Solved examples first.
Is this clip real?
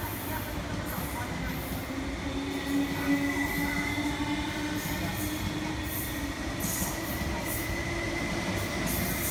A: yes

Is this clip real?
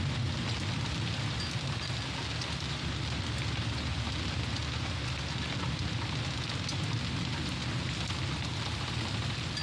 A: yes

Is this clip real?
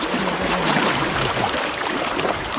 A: no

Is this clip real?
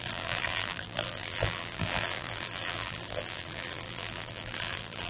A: no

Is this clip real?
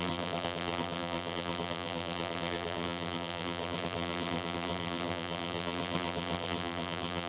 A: no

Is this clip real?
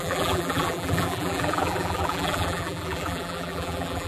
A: no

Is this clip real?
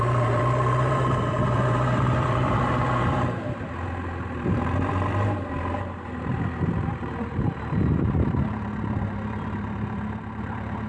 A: no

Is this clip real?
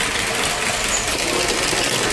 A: yes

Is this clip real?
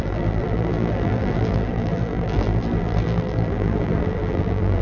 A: no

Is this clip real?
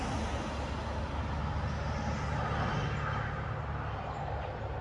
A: yes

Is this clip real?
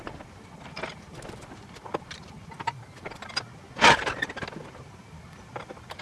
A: yes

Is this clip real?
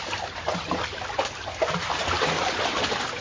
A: yes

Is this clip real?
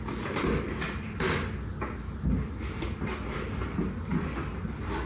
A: yes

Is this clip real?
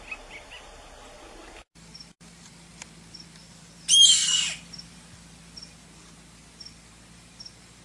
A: yes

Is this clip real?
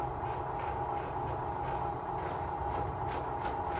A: yes